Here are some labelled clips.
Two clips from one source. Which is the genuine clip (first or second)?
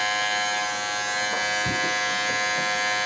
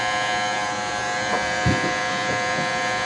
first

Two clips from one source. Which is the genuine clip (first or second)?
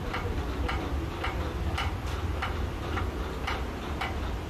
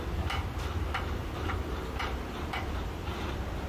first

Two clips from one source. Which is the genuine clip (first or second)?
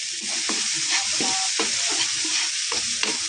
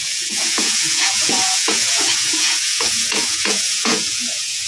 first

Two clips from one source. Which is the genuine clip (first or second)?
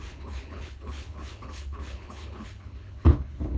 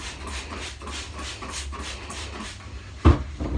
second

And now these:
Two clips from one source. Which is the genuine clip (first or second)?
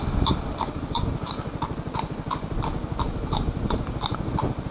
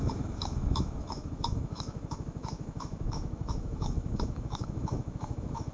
first